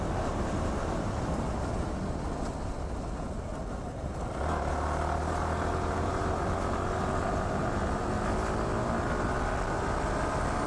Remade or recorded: recorded